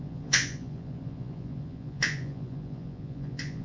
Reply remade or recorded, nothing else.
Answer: remade